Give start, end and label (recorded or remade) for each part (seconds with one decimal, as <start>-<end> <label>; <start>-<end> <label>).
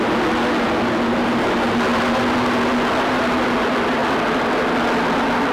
0.0-5.5 recorded